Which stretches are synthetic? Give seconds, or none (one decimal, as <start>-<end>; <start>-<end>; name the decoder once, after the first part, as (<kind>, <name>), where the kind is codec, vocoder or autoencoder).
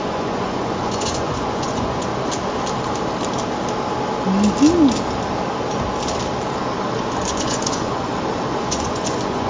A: 0.0-2.1 (vocoder, Vocos); 7.3-8.1; 8.6-9.5